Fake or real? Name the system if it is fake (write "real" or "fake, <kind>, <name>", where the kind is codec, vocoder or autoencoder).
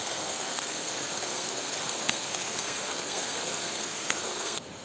fake, codec, SNAC